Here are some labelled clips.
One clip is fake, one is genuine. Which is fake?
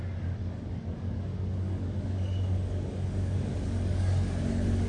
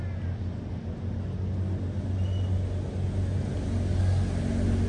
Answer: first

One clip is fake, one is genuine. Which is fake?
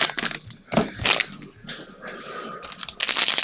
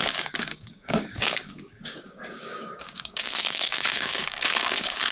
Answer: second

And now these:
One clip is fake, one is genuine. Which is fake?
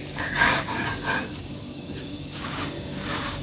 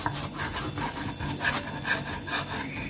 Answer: first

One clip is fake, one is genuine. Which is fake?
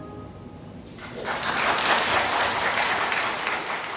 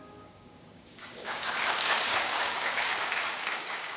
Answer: second